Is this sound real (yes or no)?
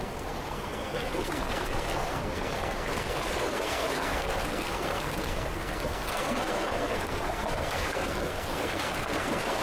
no